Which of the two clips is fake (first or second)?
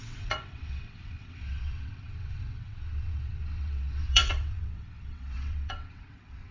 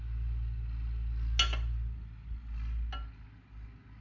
first